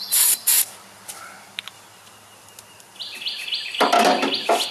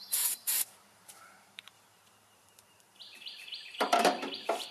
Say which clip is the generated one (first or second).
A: second